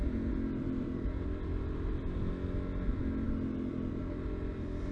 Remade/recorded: recorded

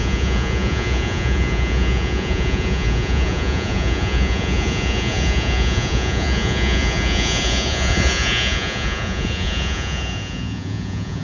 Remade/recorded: remade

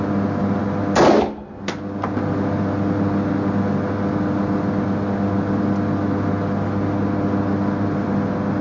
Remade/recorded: recorded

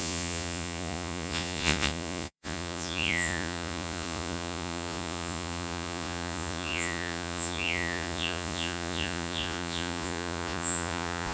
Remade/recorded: remade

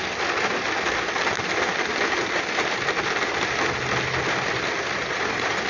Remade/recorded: recorded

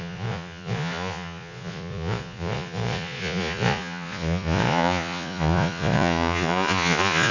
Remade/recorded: remade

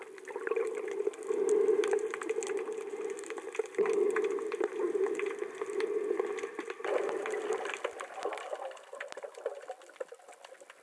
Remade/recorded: recorded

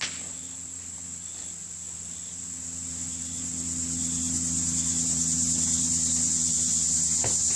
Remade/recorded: recorded